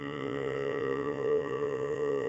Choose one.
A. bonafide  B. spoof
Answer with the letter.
B